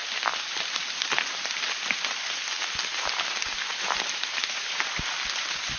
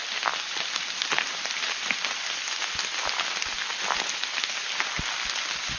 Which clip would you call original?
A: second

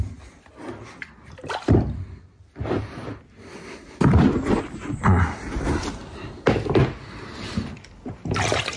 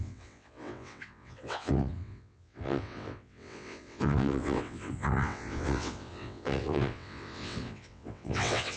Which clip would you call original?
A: first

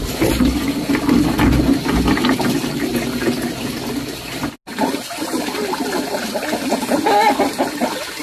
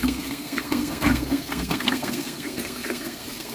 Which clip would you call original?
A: first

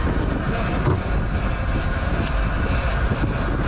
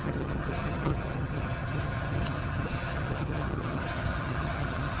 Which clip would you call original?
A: first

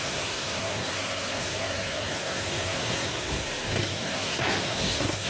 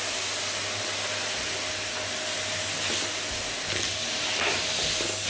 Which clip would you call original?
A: second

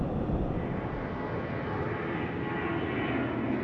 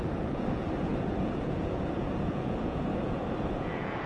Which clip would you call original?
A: first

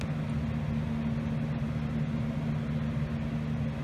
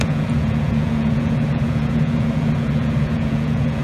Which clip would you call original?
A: first